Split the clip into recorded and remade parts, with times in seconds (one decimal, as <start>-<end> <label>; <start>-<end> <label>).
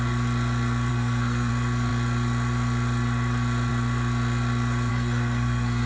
0.0-0.9 recorded; 0.9-1.5 remade; 1.5-4.9 recorded; 4.9-5.9 remade